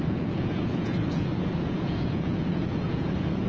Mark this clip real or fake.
fake